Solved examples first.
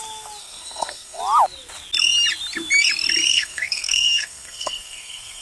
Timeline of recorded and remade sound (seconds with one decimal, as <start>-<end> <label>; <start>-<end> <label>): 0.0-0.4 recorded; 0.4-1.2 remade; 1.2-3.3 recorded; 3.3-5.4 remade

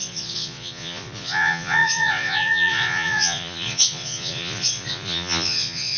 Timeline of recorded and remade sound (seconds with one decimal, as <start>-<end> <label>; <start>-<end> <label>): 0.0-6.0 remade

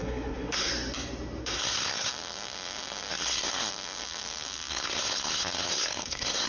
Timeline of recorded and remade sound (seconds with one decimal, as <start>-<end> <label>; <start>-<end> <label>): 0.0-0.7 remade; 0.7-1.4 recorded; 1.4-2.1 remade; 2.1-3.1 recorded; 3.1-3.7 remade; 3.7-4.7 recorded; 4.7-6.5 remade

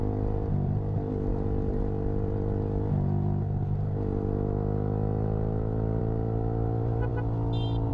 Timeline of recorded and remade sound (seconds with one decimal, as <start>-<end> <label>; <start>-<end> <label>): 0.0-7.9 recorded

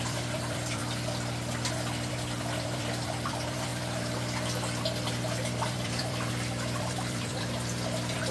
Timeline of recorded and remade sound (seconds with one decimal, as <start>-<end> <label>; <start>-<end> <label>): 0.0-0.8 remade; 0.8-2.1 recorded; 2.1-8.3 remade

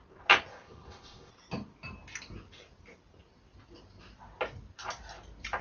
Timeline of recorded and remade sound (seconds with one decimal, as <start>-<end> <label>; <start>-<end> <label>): 0.0-0.5 recorded; 0.5-1.3 remade; 1.3-5.6 recorded

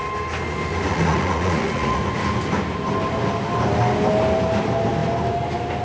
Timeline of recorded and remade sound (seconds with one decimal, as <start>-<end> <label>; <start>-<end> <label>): 0.0-0.9 recorded; 0.9-2.0 remade; 2.0-5.8 recorded